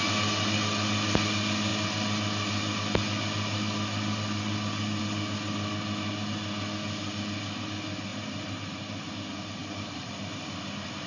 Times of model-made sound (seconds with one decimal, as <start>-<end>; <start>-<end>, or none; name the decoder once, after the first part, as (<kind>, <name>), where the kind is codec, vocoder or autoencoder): 8.1-9.1 (vocoder, BigVGAN v2); 9.6-10.6